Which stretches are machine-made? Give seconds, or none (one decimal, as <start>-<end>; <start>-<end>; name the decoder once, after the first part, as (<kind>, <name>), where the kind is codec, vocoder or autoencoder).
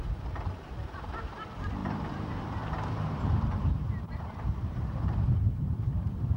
1.8-5.6 (vocoder, BigVGAN v2)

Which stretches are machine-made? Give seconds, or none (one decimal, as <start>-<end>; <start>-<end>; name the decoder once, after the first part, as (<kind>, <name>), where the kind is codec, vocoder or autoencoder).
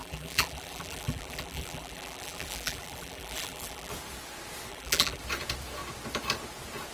0.0-3.9 (vocoder, BigVGAN v2); 4.7-5.2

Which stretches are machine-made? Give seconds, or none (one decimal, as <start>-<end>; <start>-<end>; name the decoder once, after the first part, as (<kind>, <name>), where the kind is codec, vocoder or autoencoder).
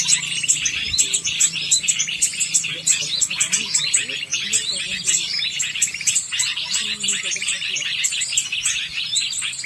0.0-2.3 (vocoder, BigVGAN v2); 3.8-4.3; 4.8-9.7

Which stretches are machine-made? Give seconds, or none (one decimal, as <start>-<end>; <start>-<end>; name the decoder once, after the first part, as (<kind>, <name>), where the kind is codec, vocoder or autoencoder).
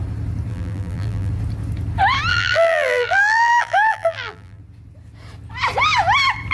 0.5-1.3 (vocoder, BigVGAN v2); 2.3-4.6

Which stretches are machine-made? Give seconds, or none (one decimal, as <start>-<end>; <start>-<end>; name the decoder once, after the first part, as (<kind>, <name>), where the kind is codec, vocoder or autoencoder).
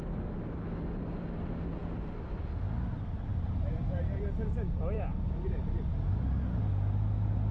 3.3-4.2 (vocoder, BigVGAN v2); 5.1-5.9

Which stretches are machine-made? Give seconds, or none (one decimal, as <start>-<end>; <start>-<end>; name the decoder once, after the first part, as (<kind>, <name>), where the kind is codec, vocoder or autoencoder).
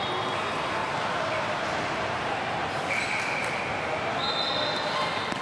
0.8-2.2 (vocoder, BigVGAN v2)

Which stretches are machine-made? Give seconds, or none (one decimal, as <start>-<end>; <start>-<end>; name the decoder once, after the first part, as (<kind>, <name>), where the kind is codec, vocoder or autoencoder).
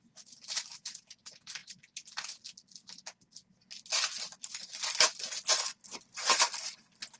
1.6-2.4 (vocoder, BigVGAN v2); 5.8-6.4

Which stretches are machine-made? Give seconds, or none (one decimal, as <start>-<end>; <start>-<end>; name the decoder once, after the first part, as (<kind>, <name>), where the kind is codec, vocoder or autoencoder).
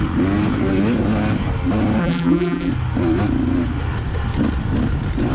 2.0-2.7 (vocoder, BigVGAN v2)